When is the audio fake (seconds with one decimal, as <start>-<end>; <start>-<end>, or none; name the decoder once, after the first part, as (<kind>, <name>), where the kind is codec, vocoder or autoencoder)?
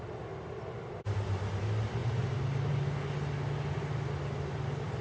none